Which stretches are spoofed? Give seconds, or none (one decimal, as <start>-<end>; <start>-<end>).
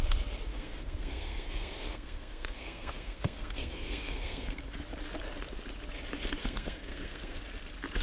0.5-4.6; 6.4-7.4